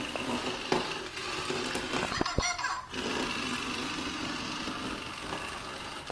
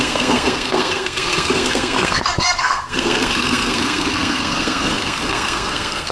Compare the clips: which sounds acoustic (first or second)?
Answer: first